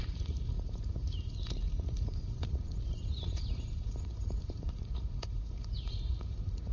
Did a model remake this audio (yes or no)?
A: yes